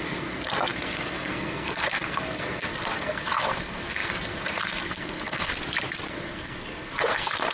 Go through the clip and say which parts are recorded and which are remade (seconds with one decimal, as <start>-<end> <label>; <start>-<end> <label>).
0.0-5.5 remade; 5.5-6.1 recorded; 6.1-7.5 remade

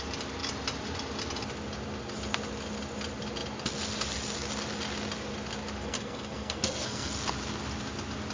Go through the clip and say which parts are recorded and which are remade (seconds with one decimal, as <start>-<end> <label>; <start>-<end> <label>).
0.0-5.8 recorded; 5.8-7.1 remade; 7.1-8.3 recorded